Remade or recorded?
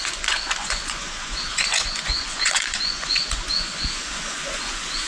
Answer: remade